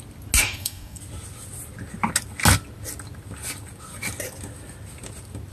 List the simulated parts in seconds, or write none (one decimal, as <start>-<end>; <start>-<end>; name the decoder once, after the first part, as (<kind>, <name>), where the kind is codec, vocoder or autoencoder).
0.4-1.0 (codec, DAC)